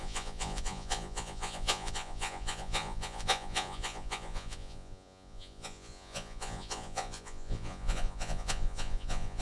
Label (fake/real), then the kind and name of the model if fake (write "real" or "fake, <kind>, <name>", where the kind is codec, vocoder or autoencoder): fake, vocoder, Vocos